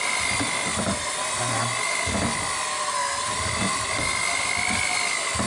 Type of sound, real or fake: real